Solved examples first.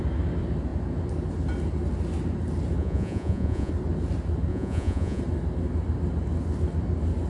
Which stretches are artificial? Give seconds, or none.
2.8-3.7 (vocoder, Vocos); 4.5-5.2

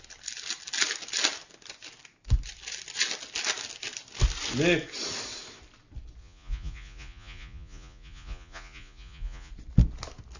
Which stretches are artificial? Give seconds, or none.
6.2-9.5 (vocoder, Vocos)

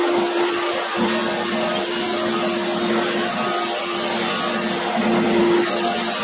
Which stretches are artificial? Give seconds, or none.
none

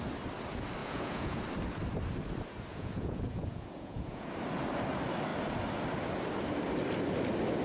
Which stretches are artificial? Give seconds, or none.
0.8-1.4 (vocoder, Vocos); 2.7-4.3

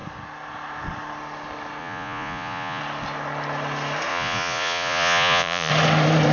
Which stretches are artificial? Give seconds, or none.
1.8-2.8 (vocoder, Vocos); 4.1-5.7

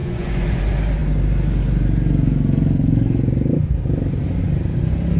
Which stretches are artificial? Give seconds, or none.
0.0-0.6 (vocoder, Vocos)

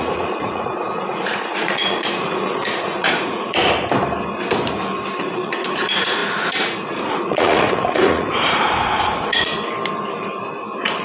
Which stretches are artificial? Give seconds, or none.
0.0-3.6 (vocoder, Vocos); 5.2-9.5